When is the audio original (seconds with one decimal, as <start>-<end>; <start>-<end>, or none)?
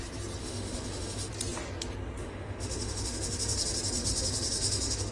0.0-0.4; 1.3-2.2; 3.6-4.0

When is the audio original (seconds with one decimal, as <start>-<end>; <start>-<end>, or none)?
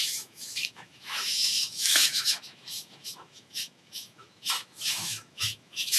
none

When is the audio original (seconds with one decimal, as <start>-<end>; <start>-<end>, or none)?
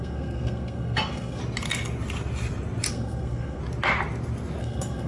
1.4-2.9; 3.6-4.6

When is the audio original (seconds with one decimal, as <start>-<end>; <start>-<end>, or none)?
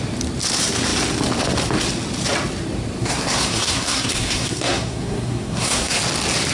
0.0-3.0; 6.0-6.5